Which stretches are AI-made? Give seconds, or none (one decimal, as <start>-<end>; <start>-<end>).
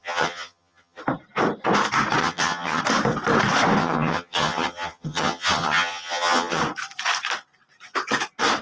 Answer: 0.0-1.0; 2.2-2.8; 3.8-6.6